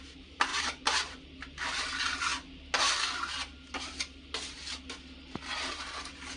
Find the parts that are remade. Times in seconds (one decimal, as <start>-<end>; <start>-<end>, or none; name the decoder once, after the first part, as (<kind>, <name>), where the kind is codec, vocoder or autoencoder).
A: 0.5-1.8 (vocoder, BigVGAN v2)